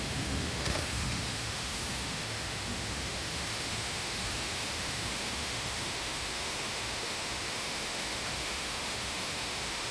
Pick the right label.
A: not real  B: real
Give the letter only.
A